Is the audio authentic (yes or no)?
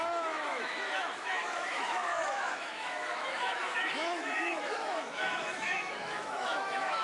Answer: no